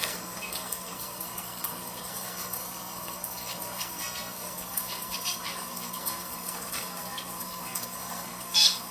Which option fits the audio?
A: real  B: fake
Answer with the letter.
B